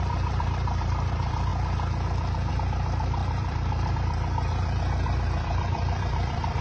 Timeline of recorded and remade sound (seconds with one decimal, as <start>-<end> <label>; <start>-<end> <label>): 0.0-1.5 remade; 1.5-2.5 recorded; 2.5-6.6 remade

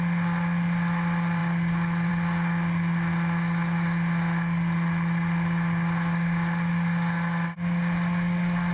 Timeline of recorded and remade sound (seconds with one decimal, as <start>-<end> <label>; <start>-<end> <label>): 0.0-8.7 recorded

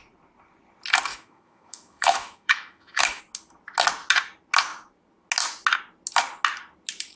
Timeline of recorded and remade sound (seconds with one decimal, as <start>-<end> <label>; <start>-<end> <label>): 0.0-1.1 recorded; 1.1-3.2 remade; 3.2-7.2 recorded

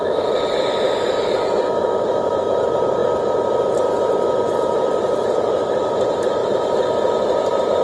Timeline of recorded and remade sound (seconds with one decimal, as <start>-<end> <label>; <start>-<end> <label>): 0.0-7.8 recorded

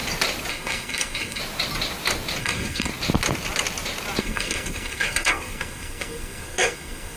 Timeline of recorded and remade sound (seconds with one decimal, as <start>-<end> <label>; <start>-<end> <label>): 0.0-0.5 recorded; 0.5-1.4 remade; 1.4-2.4 recorded; 2.4-2.9 remade; 2.9-4.2 recorded; 4.2-7.2 remade

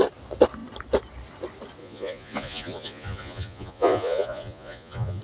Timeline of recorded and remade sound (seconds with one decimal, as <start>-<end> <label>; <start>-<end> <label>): 0.0-1.8 recorded; 1.8-5.2 remade